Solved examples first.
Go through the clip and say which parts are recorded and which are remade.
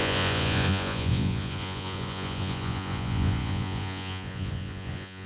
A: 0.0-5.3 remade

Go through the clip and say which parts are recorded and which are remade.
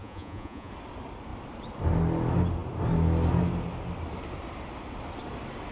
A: 0.0-0.7 remade; 0.7-5.7 recorded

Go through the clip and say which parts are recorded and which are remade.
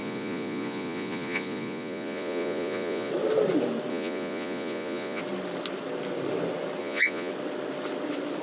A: 0.0-3.1 remade; 3.1-3.9 recorded; 3.9-5.2 remade; 5.2-6.8 recorded; 6.8-7.3 remade; 7.3-8.4 recorded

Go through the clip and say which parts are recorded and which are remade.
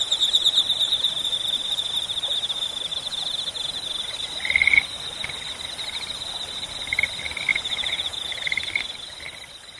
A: 0.0-7.5 recorded; 7.5-8.3 remade; 8.3-9.8 recorded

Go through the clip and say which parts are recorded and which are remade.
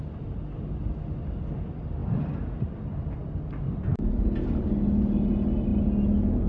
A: 0.0-6.5 recorded